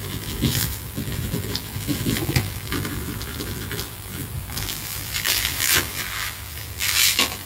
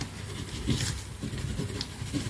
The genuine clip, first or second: second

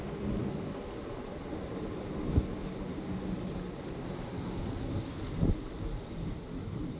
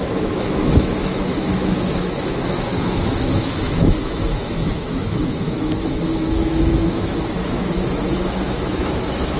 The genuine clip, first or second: first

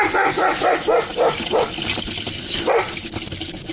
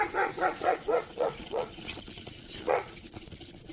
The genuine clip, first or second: first